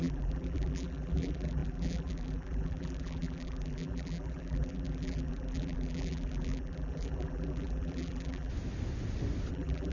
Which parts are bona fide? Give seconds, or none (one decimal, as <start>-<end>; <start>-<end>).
8.5-9.5